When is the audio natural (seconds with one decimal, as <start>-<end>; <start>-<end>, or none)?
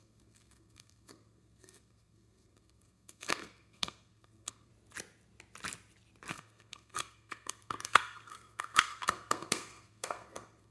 4.7-6.3